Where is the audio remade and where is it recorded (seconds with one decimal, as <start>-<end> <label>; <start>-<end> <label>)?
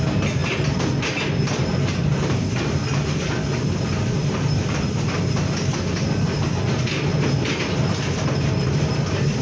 0.0-4.2 recorded; 4.2-5.3 remade; 5.3-7.1 recorded; 7.1-8.5 remade; 8.5-9.4 recorded